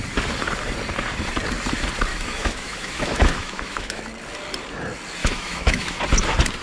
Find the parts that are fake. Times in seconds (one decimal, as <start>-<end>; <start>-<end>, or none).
2.1-4.0; 5.2-6.0